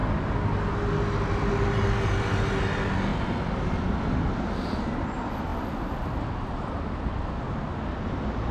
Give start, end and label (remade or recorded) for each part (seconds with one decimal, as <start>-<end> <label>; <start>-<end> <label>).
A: 0.0-8.5 recorded